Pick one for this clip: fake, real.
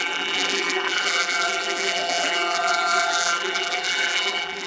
fake